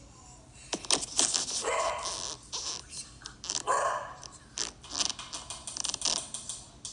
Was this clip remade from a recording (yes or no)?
no